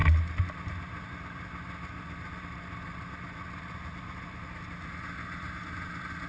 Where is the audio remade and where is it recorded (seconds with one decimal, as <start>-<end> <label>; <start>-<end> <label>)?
0.0-6.3 recorded